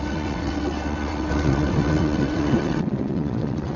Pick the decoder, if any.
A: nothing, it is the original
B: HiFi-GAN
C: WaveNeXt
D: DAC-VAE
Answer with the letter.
C